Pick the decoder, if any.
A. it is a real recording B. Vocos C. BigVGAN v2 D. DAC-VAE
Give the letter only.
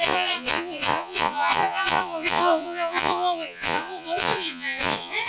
B